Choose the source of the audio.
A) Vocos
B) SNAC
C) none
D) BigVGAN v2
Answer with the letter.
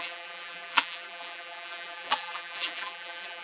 D